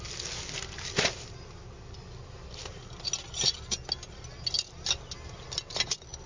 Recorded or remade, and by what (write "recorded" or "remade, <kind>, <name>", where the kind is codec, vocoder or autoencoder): recorded